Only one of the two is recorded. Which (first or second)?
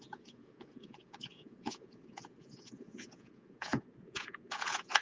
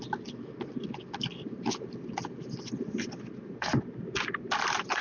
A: second